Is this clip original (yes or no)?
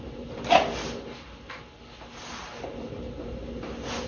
yes